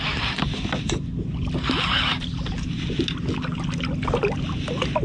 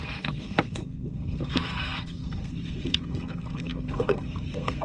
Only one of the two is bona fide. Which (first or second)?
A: first